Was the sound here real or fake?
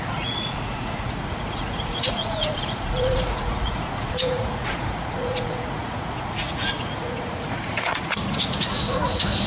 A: fake